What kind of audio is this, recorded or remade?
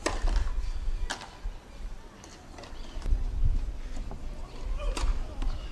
recorded